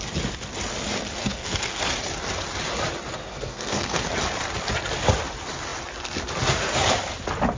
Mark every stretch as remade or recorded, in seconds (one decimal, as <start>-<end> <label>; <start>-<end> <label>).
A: 0.0-1.2 recorded; 1.2-1.8 remade; 1.8-3.2 recorded; 3.2-4.1 remade; 4.1-7.6 recorded